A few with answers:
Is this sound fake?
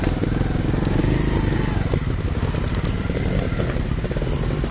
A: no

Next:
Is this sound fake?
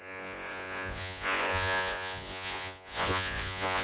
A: yes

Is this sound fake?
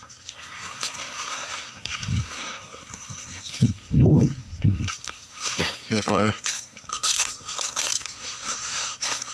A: yes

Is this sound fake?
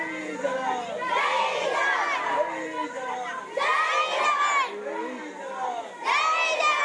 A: no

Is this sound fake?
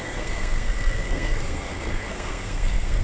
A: yes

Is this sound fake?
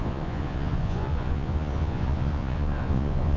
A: yes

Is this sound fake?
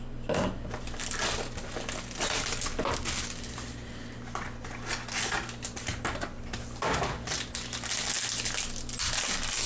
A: no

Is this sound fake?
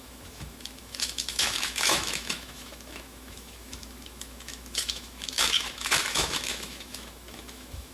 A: yes